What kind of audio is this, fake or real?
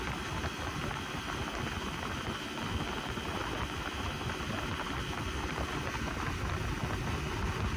real